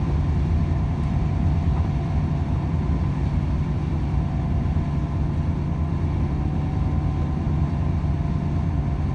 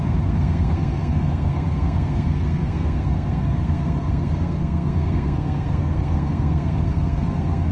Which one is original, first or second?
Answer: first